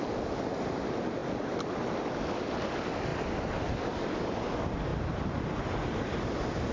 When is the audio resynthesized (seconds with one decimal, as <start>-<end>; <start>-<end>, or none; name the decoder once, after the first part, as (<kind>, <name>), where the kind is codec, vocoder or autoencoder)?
1.2-1.8 (vocoder, BigVGAN v2); 3.1-3.8; 4.9-6.7